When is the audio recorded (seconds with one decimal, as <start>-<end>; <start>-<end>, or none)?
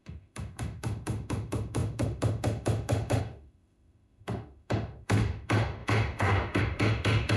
none